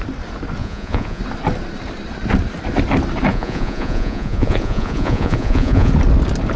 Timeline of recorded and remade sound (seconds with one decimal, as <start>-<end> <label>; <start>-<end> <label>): 0.0-0.6 recorded; 0.6-1.2 remade; 1.2-3.3 recorded; 3.3-5.9 remade; 5.9-6.6 recorded